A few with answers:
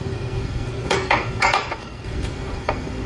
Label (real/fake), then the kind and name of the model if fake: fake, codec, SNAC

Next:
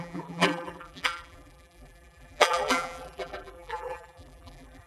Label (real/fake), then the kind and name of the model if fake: fake, vocoder, BigVGAN v2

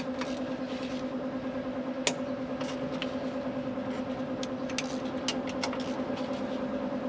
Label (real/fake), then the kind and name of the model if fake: real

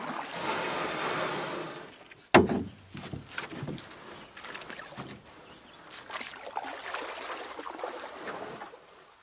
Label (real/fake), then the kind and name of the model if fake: real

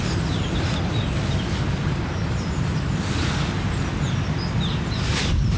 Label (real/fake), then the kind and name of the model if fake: real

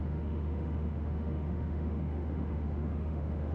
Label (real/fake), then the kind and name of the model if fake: fake, autoencoder, DAC-VAE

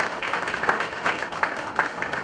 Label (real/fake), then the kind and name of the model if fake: fake, autoencoder, DAC-VAE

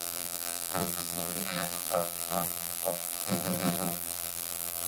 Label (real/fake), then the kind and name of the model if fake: fake, vocoder, BigVGAN v2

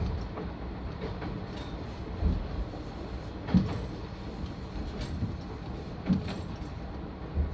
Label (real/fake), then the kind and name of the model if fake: real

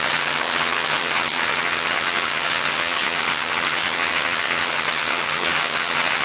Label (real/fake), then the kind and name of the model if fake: fake, vocoder, HiFi-GAN